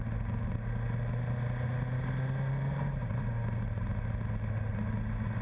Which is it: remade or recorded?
recorded